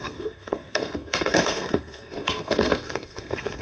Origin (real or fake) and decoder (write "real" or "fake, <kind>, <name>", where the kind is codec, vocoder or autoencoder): fake, codec, SNAC